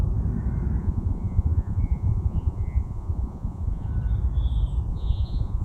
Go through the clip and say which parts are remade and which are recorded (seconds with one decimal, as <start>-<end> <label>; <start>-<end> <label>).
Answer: 0.0-0.8 recorded; 0.8-3.9 remade; 3.9-4.9 recorded; 4.9-5.6 remade